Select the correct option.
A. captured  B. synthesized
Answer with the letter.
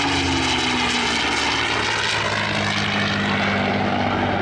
A